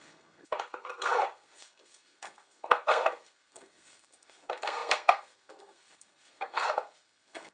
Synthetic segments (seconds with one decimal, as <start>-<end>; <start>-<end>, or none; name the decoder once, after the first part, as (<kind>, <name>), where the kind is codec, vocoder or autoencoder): 0.0-7.5 (codec, SNAC)